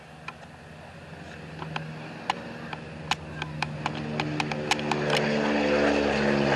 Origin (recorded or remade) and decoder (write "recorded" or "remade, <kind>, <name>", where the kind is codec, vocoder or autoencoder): recorded